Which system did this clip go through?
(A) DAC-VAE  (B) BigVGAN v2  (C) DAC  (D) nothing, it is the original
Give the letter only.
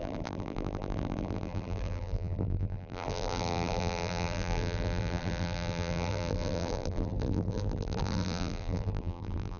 B